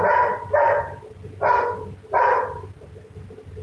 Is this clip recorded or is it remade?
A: recorded